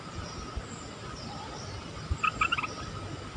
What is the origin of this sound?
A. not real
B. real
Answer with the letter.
B